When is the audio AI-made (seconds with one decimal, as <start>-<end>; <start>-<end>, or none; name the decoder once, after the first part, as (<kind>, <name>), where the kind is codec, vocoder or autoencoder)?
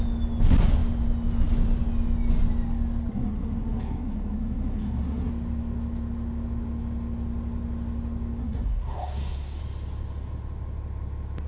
3.1-5.3 (codec, SNAC); 8.4-9.6